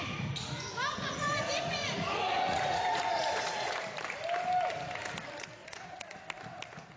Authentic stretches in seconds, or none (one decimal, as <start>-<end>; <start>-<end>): 0.0-0.9; 3.8-5.6; 6.2-7.0

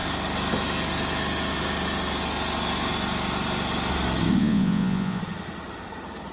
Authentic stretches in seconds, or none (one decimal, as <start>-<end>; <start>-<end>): 0.0-4.4; 5.2-6.3